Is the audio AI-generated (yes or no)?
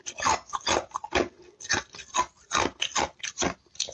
no